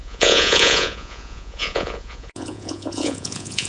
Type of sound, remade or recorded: remade